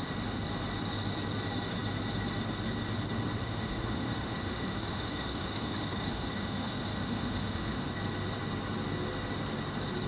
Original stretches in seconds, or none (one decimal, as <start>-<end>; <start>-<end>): 0.0-3.4; 7.9-10.1